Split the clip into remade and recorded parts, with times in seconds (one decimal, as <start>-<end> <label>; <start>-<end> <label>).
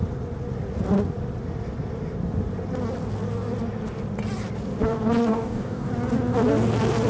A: 0.0-5.2 recorded; 5.2-5.9 remade; 5.9-7.1 recorded